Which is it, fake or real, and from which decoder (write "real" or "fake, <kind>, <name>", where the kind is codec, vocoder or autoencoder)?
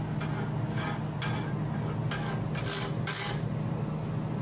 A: real